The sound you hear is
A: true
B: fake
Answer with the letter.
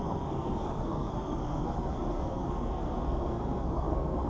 B